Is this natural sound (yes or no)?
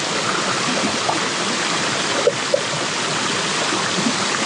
yes